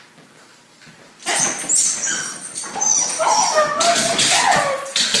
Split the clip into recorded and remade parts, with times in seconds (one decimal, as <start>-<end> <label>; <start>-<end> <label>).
0.0-5.2 recorded